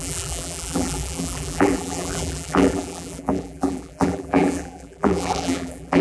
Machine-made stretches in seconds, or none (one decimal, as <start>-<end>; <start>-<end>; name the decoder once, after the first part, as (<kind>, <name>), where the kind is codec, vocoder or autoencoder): 0.0-6.0 (vocoder, BigVGAN v2)